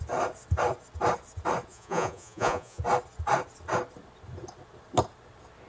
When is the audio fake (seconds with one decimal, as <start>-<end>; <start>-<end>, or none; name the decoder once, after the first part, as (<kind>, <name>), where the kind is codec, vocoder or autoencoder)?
1.7-2.8 (vocoder, Vocos)